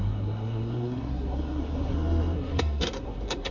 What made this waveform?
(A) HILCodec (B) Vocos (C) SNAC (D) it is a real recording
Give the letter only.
C